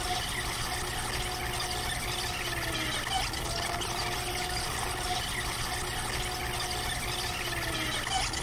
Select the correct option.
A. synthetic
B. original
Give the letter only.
B